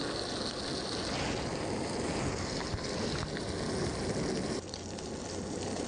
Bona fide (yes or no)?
yes